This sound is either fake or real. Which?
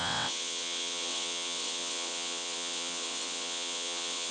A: fake